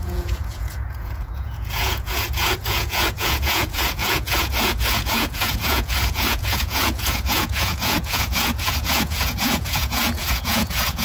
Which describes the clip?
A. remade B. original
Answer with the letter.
A